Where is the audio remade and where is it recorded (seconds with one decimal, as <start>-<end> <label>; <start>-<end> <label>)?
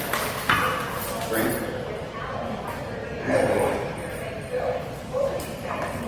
0.0-6.1 remade